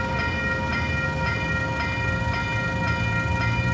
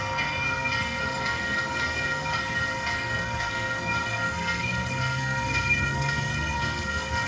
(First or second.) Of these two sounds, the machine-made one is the second